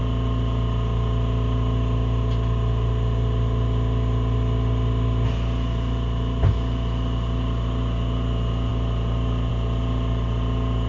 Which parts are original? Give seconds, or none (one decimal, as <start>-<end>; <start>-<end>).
0.0-10.9